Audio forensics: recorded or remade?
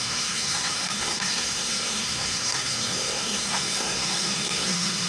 remade